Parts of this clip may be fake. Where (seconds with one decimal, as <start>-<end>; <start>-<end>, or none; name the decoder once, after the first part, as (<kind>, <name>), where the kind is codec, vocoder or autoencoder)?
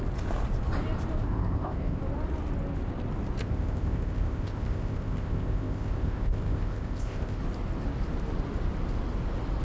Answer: 1.2-2.0 (codec, ZipCodec); 3.4-7.4